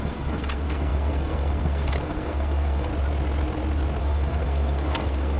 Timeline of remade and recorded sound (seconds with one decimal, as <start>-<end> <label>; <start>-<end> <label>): 0.0-2.9 remade; 2.9-4.0 recorded; 4.0-5.4 remade

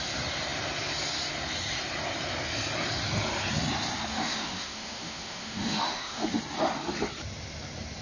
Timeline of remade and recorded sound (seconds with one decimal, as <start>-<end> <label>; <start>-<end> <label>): 0.0-4.1 recorded; 4.1-6.4 remade; 6.4-8.0 recorded

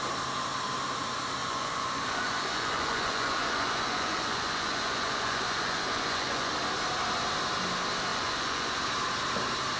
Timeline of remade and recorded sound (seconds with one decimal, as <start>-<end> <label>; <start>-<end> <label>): 0.0-1.4 recorded; 1.4-6.5 remade; 6.5-8.1 recorded; 8.1-8.8 remade; 8.8-9.8 recorded